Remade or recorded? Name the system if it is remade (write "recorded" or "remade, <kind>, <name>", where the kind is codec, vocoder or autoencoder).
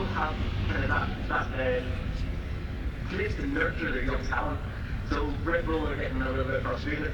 remade, codec, DAC